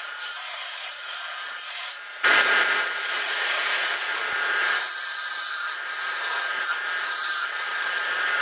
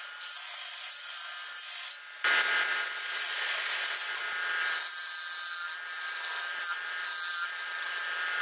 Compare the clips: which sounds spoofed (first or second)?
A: first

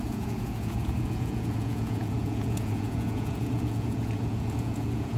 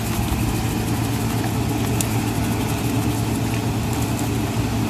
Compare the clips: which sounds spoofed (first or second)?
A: first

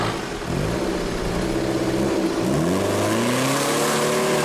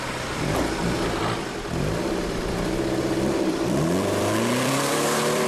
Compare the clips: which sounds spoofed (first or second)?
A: second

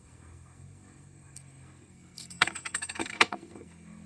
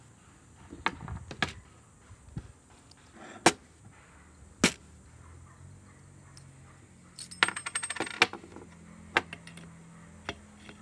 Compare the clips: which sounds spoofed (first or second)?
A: first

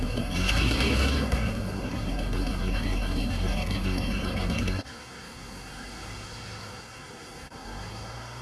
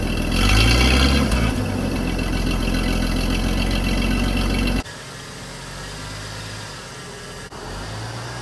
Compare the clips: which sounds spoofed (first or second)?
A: first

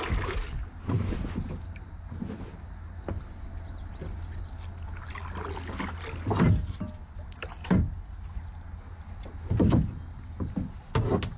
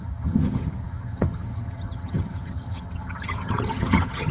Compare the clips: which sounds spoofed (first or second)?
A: second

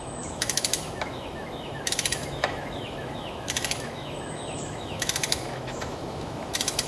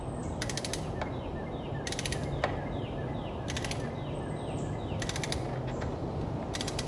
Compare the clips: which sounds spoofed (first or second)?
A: first